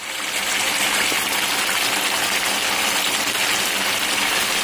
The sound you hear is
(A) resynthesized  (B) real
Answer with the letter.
B